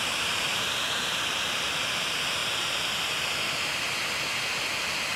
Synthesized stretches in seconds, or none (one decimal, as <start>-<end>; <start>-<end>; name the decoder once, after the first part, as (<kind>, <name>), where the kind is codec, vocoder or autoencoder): 0.0-2.4 (vocoder, BigVGAN v2)